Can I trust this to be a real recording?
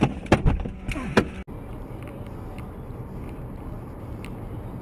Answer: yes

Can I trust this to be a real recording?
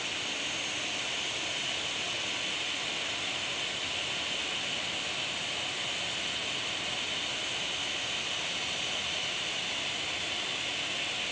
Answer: yes